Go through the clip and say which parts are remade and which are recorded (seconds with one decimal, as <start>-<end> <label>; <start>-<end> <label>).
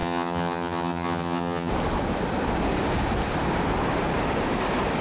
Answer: 0.0-1.7 remade; 1.7-5.0 recorded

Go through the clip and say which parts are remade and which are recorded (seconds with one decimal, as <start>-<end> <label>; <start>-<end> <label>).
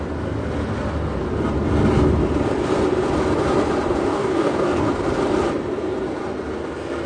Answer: 0.0-4.0 recorded; 4.0-4.9 remade; 4.9-7.1 recorded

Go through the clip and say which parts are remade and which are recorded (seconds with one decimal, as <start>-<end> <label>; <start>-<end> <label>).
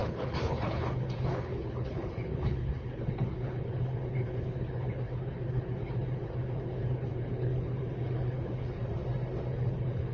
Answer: 0.0-8.8 remade; 8.8-9.5 recorded; 9.5-10.1 remade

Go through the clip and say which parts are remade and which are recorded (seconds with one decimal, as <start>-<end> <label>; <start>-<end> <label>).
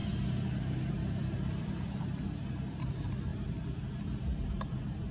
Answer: 0.0-5.1 recorded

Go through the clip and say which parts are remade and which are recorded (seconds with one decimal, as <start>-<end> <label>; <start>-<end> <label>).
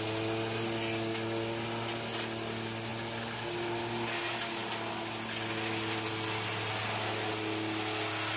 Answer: 0.0-8.4 recorded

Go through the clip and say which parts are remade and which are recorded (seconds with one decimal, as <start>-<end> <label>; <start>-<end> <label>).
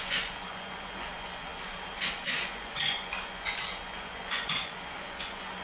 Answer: 0.0-5.6 remade